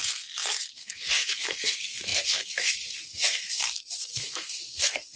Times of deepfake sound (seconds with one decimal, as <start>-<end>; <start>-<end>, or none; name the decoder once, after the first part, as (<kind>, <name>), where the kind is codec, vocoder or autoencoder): 0.0-5.2 (codec, SNAC)